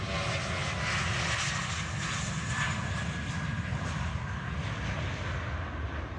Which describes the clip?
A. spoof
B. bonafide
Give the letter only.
B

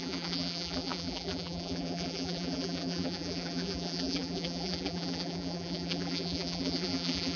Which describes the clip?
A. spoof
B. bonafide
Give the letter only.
A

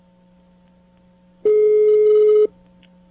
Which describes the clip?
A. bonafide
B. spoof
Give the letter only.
A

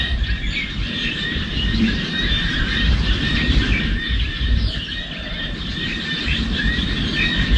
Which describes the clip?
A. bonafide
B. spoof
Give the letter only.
B